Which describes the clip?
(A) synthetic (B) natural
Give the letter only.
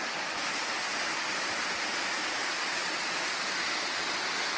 B